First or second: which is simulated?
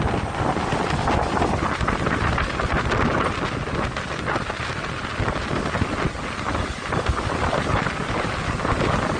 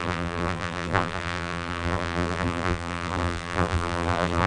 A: second